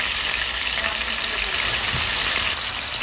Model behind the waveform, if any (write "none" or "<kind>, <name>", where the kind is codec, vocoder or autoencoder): none